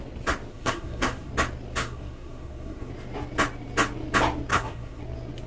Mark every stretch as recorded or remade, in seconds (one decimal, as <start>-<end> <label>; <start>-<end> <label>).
0.0-0.5 recorded; 0.5-1.3 remade; 1.3-1.8 recorded; 1.8-2.9 remade; 2.9-4.5 recorded; 4.5-5.0 remade; 5.0-5.5 recorded